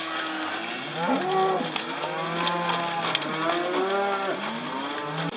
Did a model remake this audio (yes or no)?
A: no